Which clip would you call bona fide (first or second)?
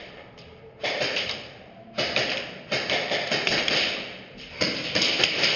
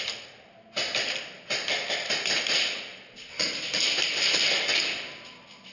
second